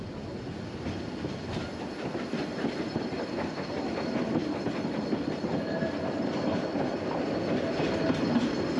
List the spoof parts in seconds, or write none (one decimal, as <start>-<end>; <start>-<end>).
none

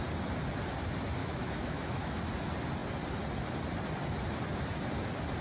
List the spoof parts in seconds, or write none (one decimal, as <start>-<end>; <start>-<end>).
1.2-2.2

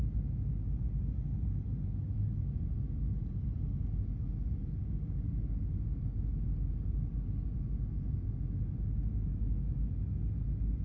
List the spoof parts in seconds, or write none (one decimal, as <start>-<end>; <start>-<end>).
9.3-10.2

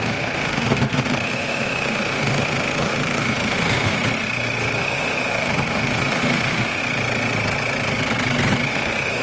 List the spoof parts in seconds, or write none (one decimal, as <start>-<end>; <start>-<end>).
0.0-4.0; 4.8-6.8; 8.7-9.2

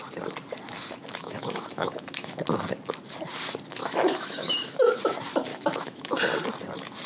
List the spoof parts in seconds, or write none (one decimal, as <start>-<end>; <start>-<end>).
1.2-2.4; 3.8-5.0; 5.5-6.1